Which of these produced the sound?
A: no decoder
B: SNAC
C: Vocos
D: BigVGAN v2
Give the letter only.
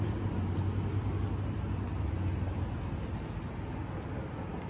A